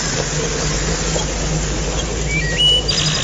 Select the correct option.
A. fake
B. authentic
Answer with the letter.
B